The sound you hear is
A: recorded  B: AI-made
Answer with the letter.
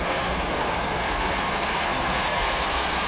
B